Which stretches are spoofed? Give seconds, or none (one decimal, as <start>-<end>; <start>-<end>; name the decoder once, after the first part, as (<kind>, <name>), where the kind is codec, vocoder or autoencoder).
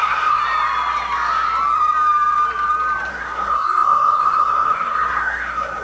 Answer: 0.0-0.4 (codec, SNAC); 3.1-5.8